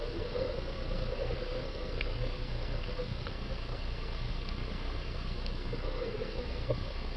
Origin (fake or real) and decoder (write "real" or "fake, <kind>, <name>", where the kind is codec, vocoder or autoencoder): fake, codec, SNAC